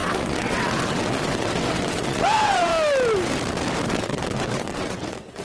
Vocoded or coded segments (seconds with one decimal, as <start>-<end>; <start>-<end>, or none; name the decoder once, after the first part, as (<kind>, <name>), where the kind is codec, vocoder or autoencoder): 0.0-2.7 (vocoder, WaveNeXt); 3.9-5.4

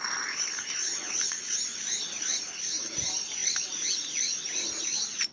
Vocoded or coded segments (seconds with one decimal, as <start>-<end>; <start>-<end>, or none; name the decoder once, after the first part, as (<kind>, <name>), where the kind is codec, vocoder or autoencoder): 0.8-1.6 (vocoder, WaveNeXt)

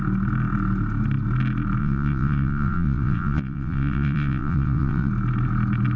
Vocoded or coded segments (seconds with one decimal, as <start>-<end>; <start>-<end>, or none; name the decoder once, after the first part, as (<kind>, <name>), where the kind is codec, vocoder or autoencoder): 1.8-5.1 (vocoder, WaveNeXt)

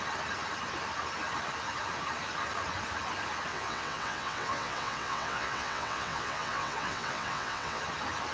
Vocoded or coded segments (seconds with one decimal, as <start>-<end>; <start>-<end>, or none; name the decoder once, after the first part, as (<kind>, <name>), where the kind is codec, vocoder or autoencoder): 3.5-7.8 (vocoder, WaveNeXt)

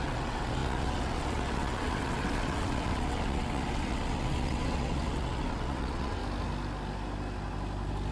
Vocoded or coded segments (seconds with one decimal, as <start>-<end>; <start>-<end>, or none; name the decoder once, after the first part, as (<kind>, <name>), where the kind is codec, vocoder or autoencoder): 0.0-6.2 (vocoder, WaveNeXt)

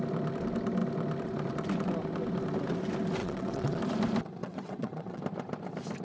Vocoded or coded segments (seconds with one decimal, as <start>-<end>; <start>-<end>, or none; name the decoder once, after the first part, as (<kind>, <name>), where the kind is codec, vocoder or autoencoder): 3.2-3.8 (vocoder, WaveNeXt); 4.4-5.2

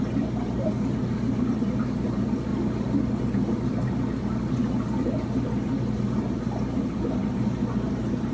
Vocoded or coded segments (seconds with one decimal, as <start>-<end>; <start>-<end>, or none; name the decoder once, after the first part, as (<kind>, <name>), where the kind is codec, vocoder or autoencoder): none

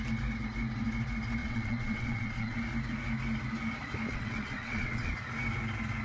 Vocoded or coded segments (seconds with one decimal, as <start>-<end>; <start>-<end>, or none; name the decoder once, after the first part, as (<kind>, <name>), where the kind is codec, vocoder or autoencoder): 1.4-2.6 (vocoder, WaveNeXt); 4.1-5.1